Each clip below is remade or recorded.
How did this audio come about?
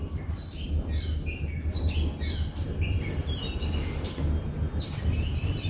recorded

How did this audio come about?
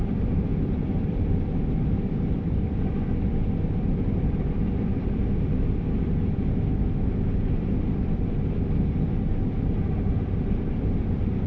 remade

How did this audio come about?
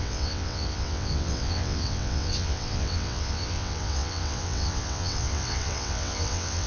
remade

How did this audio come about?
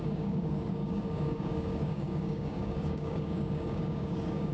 remade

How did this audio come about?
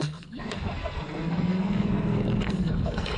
remade